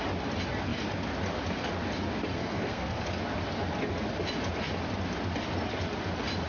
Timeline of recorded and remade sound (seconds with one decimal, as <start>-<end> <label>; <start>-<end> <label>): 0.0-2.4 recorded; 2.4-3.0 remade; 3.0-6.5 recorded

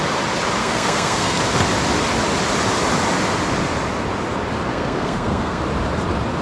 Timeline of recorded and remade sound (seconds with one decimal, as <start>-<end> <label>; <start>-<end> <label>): 0.0-0.6 recorded; 0.6-1.4 remade; 1.4-4.7 recorded; 4.7-5.6 remade; 5.6-6.4 recorded

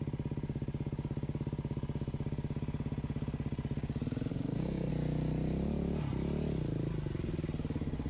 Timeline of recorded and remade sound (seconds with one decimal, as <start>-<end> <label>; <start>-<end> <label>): 0.0-4.3 recorded; 4.3-4.9 remade; 4.9-8.1 recorded

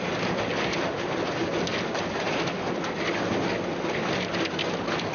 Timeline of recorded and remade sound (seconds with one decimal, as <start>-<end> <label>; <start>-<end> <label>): 0.0-5.1 recorded

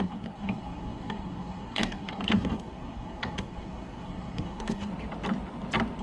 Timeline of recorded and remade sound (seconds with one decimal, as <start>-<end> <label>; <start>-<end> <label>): 0.0-4.9 remade; 4.9-6.0 recorded

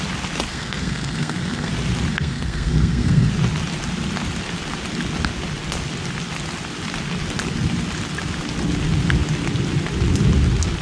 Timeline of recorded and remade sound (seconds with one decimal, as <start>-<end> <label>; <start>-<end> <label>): 0.0-0.5 recorded; 0.5-1.7 remade; 1.7-2.1 recorded; 2.1-3.3 remade; 3.3-10.8 recorded

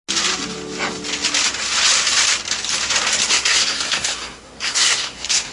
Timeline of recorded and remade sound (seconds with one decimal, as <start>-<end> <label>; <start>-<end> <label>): 0.0-3.3 recorded; 3.3-5.5 remade

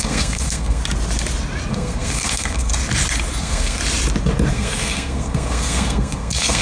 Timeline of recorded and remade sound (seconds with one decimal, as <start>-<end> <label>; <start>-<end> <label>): 0.0-0.8 remade; 0.8-1.7 recorded; 1.7-2.7 remade; 2.7-3.4 recorded; 3.4-3.8 remade; 3.8-4.5 recorded; 4.5-6.6 remade